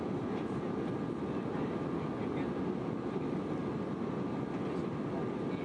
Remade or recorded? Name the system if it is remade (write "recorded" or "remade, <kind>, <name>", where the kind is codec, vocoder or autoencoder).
recorded